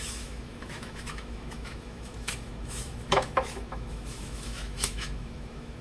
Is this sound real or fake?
fake